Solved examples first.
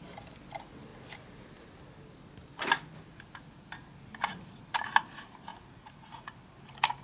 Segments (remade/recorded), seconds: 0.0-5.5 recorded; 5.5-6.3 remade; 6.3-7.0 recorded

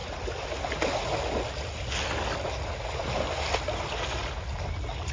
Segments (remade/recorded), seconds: 0.0-5.1 recorded

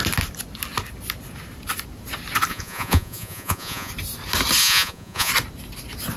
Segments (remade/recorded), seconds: 0.0-2.5 recorded; 2.5-3.9 remade; 3.9-4.6 recorded; 4.6-5.3 remade; 5.3-6.2 recorded

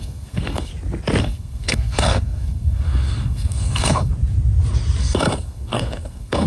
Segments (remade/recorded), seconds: 0.0-0.7 remade; 0.7-1.2 recorded; 1.2-4.1 remade; 4.1-5.0 recorded; 5.0-6.5 remade

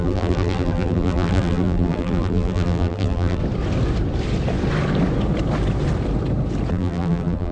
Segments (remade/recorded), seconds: 0.0-3.4 remade; 3.4-6.7 recorded; 6.7-7.5 remade

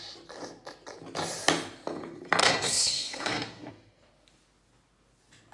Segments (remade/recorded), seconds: 0.0-2.4 recorded; 2.4-3.7 remade; 3.7-5.5 recorded

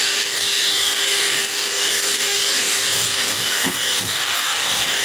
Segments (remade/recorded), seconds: 0.0-5.0 remade